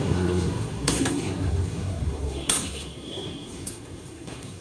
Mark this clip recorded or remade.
remade